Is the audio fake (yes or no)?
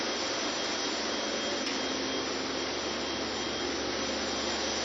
no